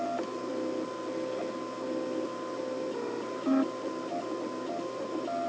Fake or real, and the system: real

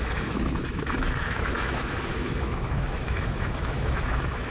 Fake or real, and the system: fake, autoencoder, DAC-VAE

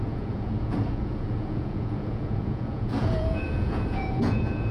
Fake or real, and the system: fake, vocoder, Vocos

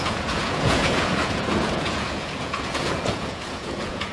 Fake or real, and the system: fake, vocoder, Vocos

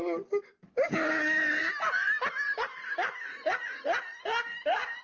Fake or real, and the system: real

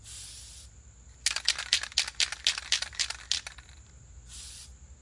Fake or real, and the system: real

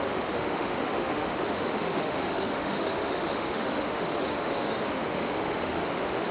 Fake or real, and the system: fake, autoencoder, DAC-VAE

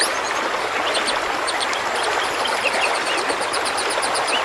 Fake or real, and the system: real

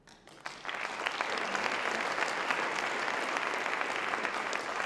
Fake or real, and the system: real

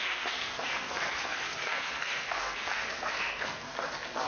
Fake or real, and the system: fake, codec, SNAC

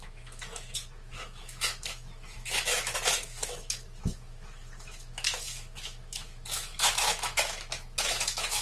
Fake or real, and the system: fake, autoencoder, DAC-VAE